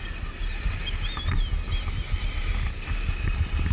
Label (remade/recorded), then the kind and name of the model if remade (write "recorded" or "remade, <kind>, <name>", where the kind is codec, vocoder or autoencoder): recorded